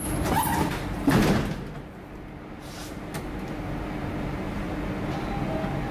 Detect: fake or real real